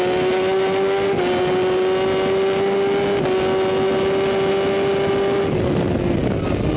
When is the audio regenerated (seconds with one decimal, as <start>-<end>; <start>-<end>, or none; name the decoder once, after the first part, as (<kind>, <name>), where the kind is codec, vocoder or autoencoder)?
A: none